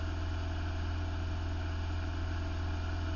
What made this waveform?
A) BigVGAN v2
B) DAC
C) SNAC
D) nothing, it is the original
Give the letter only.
D